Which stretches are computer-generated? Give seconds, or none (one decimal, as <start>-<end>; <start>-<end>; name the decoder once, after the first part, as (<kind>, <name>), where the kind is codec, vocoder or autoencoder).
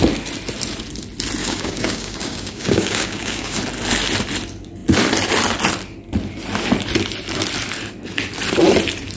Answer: 1.4-3.6 (codec, DAC)